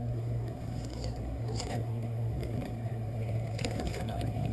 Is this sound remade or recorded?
remade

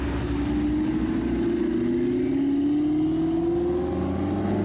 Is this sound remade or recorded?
recorded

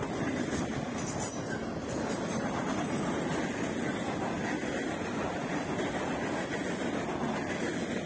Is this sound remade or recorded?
recorded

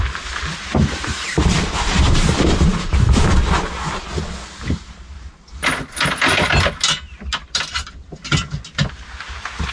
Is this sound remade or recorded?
recorded